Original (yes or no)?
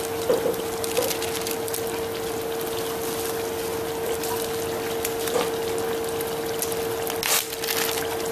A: yes